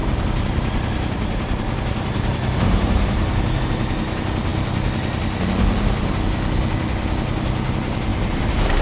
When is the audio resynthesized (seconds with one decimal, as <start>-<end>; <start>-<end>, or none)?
0.0-3.6; 8.1-8.8